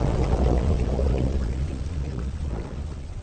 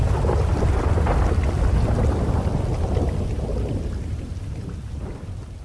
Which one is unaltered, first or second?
second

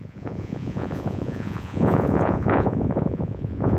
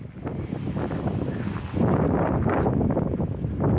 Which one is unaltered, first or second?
second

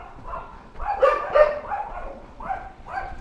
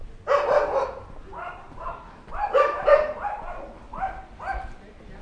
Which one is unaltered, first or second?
second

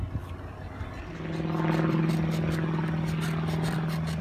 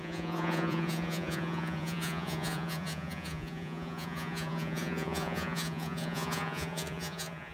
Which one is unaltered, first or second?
first